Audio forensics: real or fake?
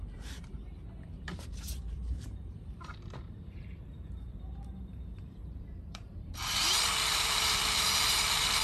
fake